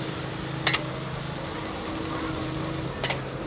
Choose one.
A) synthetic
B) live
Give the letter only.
B